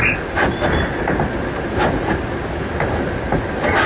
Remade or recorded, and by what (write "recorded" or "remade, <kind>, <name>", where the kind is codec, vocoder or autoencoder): recorded